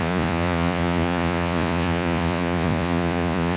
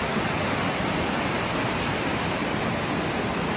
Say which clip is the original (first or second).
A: second